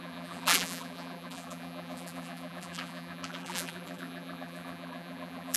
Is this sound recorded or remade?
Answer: remade